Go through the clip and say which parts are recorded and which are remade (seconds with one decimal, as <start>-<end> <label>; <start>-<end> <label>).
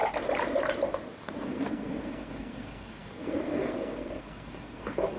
0.0-1.4 recorded; 1.4-5.2 remade